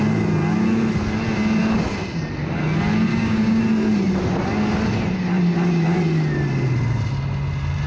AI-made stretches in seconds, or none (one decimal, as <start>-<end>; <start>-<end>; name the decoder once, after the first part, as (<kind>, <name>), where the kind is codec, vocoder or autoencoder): 3.1-3.6 (codec, DAC)